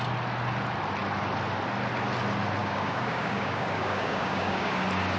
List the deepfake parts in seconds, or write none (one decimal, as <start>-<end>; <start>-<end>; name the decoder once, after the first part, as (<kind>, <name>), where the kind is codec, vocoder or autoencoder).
2.6-4.7 (codec, DAC)